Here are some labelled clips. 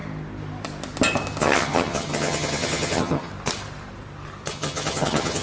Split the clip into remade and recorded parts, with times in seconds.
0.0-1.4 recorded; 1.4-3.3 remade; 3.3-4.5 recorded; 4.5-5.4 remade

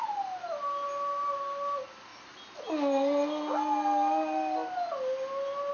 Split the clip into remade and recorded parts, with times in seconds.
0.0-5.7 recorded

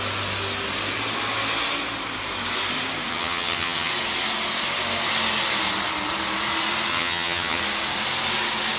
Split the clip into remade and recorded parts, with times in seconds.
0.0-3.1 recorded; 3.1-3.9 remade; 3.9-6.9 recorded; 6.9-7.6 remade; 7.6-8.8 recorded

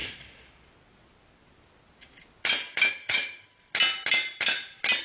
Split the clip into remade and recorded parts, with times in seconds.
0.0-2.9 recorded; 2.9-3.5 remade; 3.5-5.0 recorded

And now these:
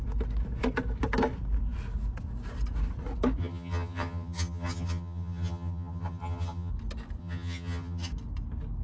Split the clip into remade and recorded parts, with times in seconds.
0.0-3.4 recorded; 3.4-6.7 remade; 6.7-7.2 recorded; 7.2-8.1 remade; 8.1-8.8 recorded

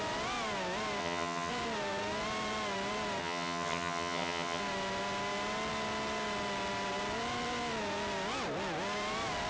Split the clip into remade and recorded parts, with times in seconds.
0.0-1.0 recorded; 1.0-1.5 remade; 1.5-3.2 recorded; 3.2-4.6 remade; 4.6-9.5 recorded

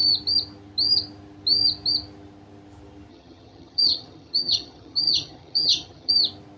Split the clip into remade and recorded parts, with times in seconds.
0.0-3.1 recorded; 3.1-6.1 remade; 6.1-6.6 recorded